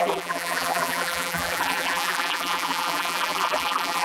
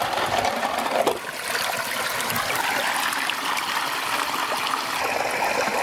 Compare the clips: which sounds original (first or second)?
second